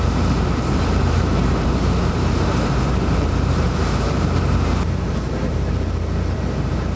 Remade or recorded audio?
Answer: remade